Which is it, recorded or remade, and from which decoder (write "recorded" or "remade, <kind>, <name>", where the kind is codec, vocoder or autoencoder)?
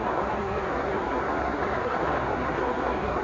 remade, codec, SNAC